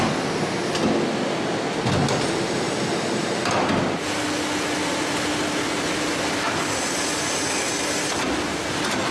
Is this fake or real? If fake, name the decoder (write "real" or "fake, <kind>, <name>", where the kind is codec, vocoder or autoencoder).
real